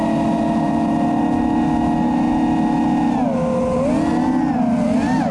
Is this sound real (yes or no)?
yes